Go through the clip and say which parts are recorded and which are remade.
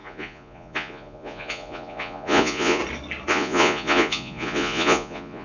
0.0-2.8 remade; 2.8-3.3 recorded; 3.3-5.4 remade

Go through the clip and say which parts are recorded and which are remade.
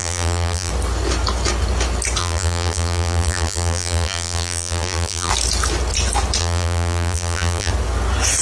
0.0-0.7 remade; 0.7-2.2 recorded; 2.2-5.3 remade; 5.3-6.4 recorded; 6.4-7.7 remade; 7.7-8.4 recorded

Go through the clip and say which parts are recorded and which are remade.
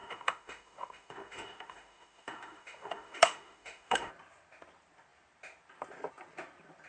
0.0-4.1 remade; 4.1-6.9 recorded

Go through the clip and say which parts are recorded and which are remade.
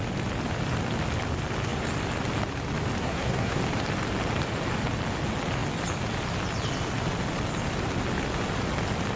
0.0-3.0 recorded; 3.0-3.6 remade; 3.6-9.2 recorded